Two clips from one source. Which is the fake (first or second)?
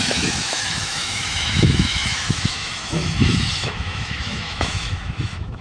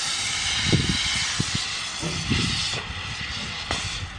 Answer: first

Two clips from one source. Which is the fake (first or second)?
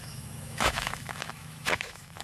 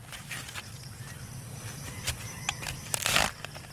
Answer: first